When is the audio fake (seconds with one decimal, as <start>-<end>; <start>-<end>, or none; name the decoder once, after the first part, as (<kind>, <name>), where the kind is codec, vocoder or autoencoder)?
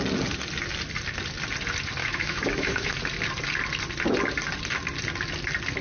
2.0-2.9 (autoencoder, DAC-VAE)